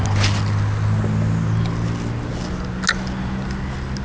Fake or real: real